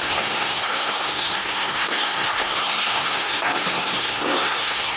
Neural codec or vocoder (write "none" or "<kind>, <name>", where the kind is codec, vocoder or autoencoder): codec, SNAC